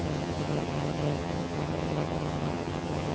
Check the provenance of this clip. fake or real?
fake